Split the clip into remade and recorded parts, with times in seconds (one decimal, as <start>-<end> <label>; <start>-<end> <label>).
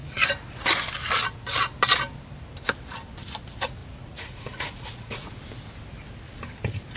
0.0-3.8 recorded; 3.8-5.3 remade; 5.3-7.0 recorded